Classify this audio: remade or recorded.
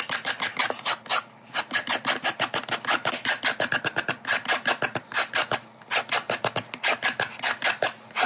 recorded